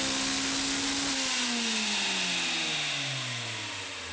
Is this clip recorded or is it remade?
recorded